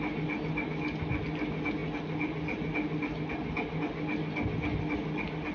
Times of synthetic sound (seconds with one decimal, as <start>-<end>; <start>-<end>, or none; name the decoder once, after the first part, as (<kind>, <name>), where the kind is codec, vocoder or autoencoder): none